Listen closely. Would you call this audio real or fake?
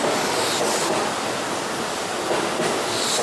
real